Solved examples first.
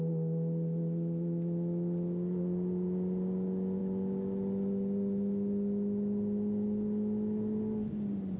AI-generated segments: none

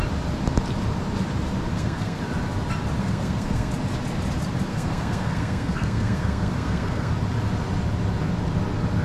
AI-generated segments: 1.7-2.2 (codec, SNAC); 3.0-3.7; 4.7-7.1